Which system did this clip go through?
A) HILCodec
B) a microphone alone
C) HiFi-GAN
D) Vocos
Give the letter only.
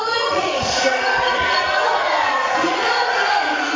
D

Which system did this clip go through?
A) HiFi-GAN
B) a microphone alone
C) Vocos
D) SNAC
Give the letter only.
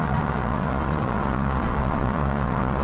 C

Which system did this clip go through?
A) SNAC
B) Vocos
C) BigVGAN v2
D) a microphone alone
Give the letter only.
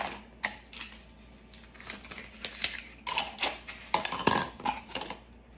D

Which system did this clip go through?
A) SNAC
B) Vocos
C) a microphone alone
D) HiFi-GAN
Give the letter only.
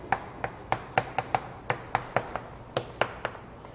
C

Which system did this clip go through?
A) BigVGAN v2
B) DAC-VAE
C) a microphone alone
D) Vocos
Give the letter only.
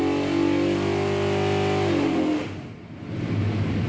C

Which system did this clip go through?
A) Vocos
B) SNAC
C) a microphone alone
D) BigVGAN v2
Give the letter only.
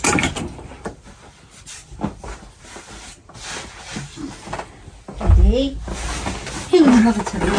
C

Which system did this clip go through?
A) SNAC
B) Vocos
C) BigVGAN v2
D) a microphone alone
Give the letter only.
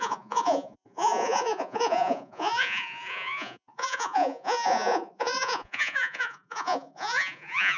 B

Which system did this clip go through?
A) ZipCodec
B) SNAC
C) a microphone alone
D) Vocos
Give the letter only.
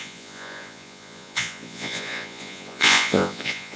D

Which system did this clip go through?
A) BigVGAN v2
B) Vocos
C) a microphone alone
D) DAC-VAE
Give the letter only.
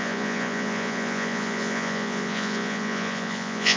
B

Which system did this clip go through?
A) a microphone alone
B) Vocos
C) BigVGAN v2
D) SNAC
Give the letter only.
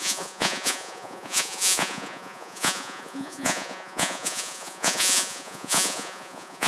B